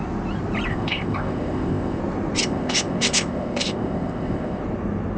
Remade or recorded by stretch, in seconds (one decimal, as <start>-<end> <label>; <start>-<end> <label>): 0.0-0.7 recorded; 0.7-2.0 remade; 2.0-2.4 recorded; 2.4-4.6 remade; 4.6-5.2 recorded

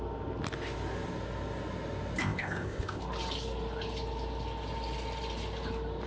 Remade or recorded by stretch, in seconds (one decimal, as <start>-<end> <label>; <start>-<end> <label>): 0.0-2.2 recorded; 2.2-3.0 remade; 3.0-6.1 recorded

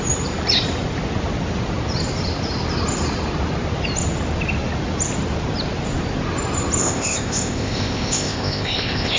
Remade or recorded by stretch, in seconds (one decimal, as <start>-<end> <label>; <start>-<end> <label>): 0.0-6.8 recorded; 6.8-9.2 remade

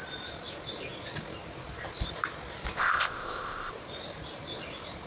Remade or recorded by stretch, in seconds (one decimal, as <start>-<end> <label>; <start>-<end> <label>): 0.0-2.8 recorded; 2.8-3.7 remade; 3.7-5.1 recorded

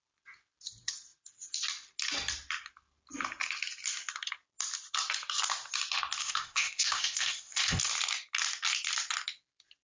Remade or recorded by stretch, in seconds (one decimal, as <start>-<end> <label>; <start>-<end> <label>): 0.0-6.2 recorded; 6.2-7.8 remade; 7.8-9.8 recorded

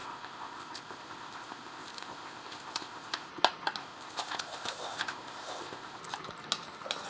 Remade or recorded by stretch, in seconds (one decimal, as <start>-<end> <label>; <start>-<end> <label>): 0.0-3.3 remade; 3.3-3.8 recorded; 3.8-6.0 remade; 6.0-7.1 recorded